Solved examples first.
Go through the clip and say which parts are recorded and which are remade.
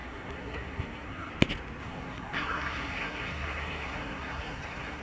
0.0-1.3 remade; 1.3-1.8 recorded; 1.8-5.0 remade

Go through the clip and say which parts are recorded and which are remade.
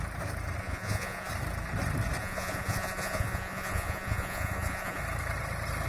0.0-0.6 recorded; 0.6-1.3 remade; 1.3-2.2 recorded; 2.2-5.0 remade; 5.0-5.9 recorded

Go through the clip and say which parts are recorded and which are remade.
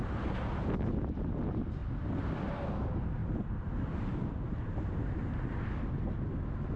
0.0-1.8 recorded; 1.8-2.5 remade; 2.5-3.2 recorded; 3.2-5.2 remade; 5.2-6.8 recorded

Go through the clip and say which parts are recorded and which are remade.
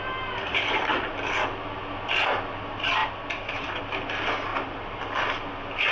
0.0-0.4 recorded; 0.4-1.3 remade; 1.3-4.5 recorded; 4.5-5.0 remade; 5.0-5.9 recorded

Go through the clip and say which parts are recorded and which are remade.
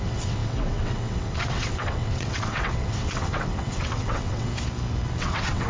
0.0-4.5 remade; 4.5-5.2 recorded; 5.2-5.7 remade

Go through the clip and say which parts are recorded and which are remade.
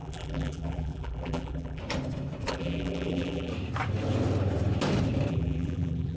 0.0-1.8 remade; 1.8-2.5 recorded; 2.5-3.5 remade; 3.5-5.3 recorded; 5.3-6.2 remade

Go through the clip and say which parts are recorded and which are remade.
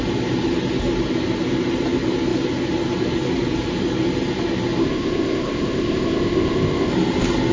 0.0-4.8 recorded; 4.8-6.9 remade; 6.9-7.5 recorded